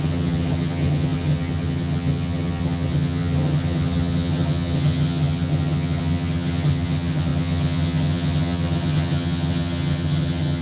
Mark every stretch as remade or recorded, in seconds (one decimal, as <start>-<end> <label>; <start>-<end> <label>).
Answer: 0.0-10.6 remade